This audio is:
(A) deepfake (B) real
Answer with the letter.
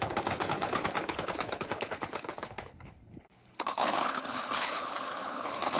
A